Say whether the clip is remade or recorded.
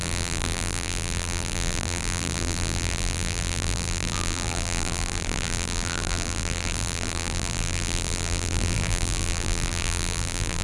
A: remade